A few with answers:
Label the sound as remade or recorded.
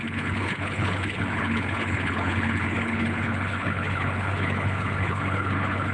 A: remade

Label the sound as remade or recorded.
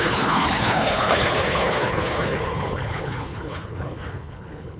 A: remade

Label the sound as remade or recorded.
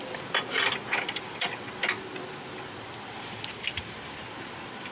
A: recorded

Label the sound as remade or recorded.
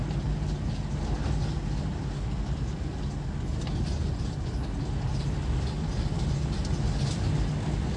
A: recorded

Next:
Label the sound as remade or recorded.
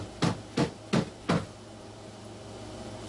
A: recorded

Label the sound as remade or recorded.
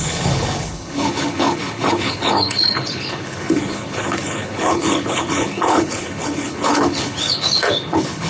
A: remade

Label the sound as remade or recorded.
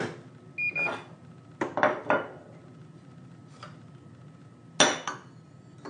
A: recorded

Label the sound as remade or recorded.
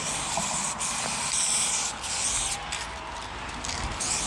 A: recorded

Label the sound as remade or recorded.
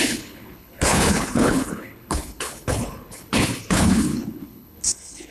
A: remade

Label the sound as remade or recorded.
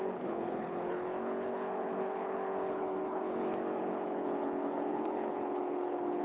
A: remade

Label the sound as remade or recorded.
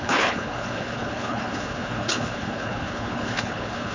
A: remade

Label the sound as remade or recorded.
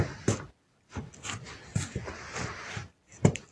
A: recorded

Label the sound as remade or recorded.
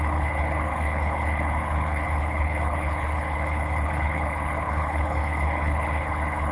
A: remade